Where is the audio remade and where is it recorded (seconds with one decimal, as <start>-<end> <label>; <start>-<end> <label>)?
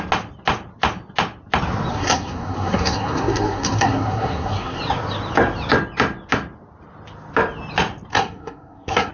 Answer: 0.0-1.9 recorded; 1.9-4.8 remade; 4.8-8.1 recorded; 8.1-9.1 remade